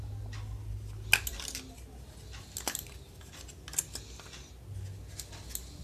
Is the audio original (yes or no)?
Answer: yes